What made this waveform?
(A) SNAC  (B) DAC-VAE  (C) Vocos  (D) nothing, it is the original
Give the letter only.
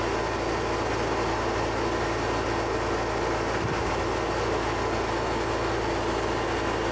D